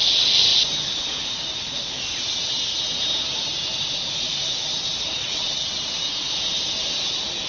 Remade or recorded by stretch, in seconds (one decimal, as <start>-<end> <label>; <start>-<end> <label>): 0.0-5.2 recorded; 5.2-5.9 remade; 5.9-7.5 recorded